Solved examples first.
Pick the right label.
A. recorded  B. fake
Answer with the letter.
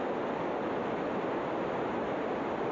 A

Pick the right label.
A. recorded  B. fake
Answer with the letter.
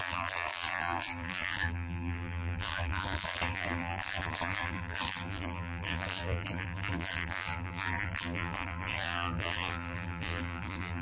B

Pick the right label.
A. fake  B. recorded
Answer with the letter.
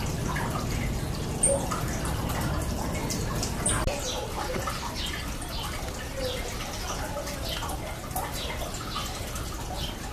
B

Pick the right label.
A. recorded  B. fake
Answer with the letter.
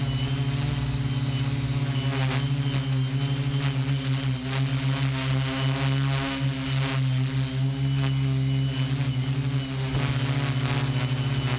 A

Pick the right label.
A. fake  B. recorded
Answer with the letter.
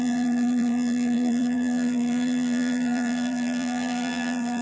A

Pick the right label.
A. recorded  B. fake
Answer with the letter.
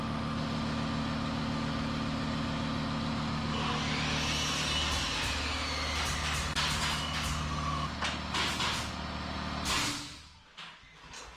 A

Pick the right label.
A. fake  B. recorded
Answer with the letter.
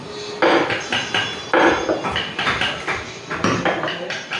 B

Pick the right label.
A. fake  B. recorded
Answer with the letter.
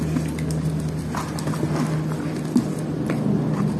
B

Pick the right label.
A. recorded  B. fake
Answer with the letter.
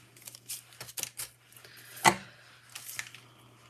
A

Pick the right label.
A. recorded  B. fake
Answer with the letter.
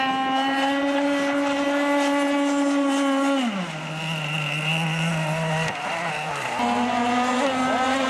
A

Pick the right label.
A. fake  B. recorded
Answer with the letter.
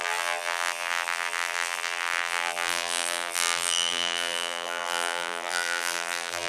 A